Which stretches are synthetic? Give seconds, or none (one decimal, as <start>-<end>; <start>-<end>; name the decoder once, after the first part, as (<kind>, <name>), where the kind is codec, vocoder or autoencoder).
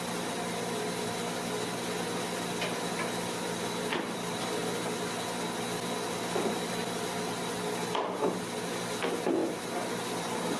none